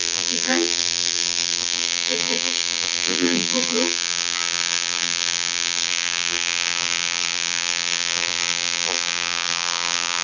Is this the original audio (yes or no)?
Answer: no